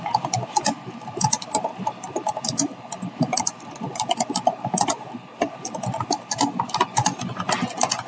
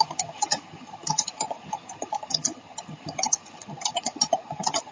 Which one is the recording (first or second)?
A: first